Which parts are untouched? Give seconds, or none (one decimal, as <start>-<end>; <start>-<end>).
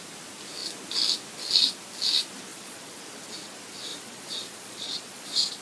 0.0-2.5; 3.0-3.9